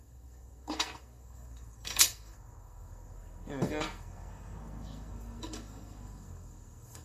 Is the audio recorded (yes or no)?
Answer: no